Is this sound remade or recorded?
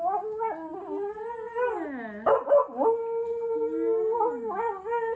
recorded